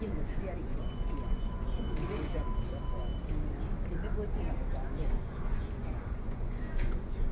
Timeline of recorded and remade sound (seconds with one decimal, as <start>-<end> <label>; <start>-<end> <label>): 0.0-3.1 remade; 3.1-5.0 recorded; 5.0-7.3 remade